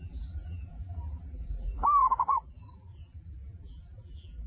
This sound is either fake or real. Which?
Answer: fake